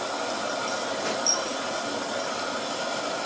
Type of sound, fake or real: real